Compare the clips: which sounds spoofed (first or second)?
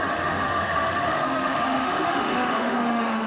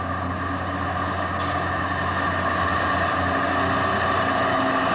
first